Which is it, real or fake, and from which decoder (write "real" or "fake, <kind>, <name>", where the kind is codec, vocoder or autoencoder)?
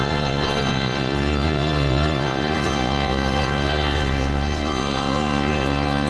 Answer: fake, vocoder, Vocos